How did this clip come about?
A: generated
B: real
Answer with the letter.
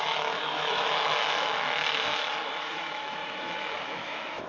A